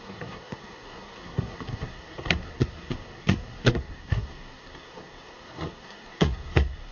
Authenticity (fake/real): fake